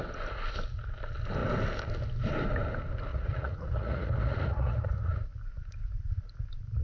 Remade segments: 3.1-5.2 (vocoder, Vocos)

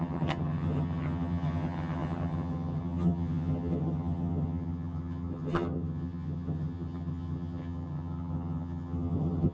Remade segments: 0.0-9.5 (vocoder, HiFi-GAN)

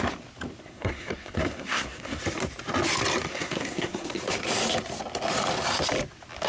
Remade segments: 0.6-2.2 (codec, SNAC); 3.3-4.2

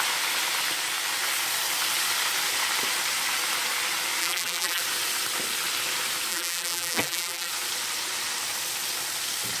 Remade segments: 4.2-4.8 (vocoder, BigVGAN v2); 6.3-7.5

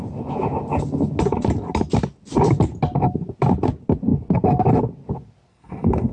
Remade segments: 5.5-6.1 (codec, SNAC)